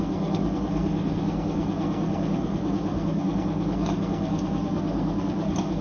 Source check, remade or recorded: remade